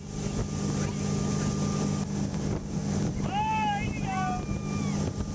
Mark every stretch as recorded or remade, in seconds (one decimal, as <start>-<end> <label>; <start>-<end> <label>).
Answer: 0.0-5.3 recorded